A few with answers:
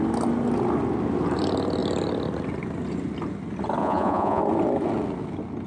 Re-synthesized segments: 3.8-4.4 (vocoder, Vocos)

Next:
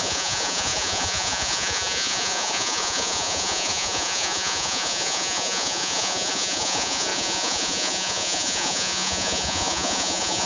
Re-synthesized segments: 0.0-10.5 (vocoder, Vocos)

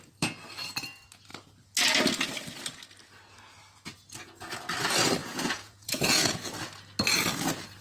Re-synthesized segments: 5.2-6.5 (vocoder, Vocos)